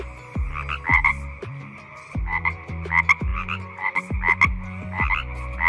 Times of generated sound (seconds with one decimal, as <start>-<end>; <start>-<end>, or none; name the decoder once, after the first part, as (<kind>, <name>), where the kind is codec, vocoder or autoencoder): 1.9-2.7 (vocoder, BigVGAN v2); 3.3-4.0